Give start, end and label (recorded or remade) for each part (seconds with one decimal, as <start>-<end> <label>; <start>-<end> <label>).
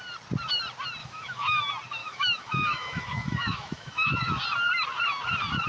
0.0-1.0 recorded; 1.0-1.6 remade; 1.6-2.0 recorded; 2.0-4.4 remade; 4.4-5.7 recorded